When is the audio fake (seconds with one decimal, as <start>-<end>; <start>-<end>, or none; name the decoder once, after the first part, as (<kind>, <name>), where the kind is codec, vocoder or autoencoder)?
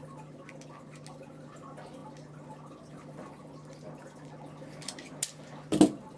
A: none